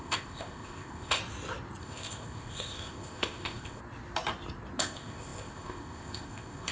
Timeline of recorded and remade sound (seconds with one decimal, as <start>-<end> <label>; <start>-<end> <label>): 0.0-1.2 remade; 1.2-1.8 recorded; 1.8-3.8 remade; 3.8-4.8 recorded; 4.8-6.7 remade